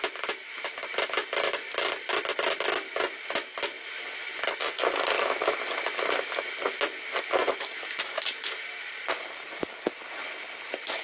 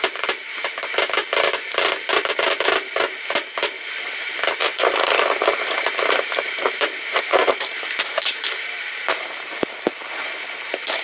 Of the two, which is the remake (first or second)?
second